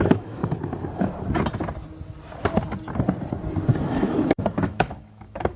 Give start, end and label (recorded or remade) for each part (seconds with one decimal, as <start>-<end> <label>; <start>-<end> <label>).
0.0-0.4 remade; 0.4-3.8 recorded; 3.8-5.6 remade